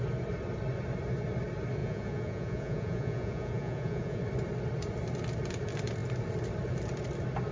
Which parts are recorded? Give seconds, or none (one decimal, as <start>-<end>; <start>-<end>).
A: 0.0-1.8; 4.2-7.5